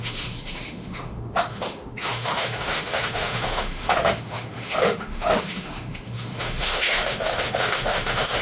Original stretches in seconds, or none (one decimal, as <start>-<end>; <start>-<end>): none